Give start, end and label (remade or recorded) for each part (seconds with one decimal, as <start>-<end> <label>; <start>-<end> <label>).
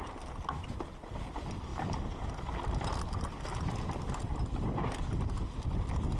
0.0-6.2 recorded